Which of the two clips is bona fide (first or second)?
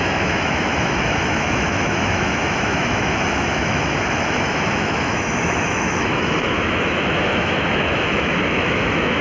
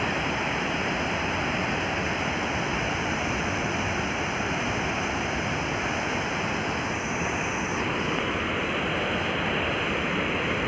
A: second